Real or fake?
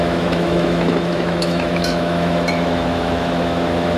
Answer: fake